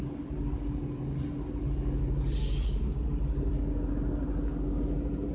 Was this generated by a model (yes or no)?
no